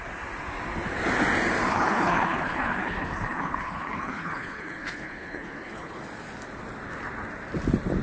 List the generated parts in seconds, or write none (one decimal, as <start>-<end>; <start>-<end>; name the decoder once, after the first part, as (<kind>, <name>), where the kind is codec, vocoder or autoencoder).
1.7-6.0 (codec, HILCodec)